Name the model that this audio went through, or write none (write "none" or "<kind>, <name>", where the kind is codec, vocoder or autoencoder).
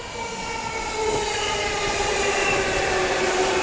none